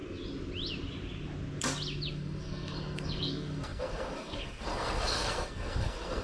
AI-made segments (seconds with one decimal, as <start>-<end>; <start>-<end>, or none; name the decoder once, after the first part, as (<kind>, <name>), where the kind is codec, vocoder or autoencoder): 2.1-6.2 (codec, SNAC)